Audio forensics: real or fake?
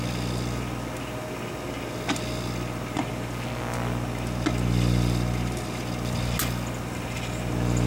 real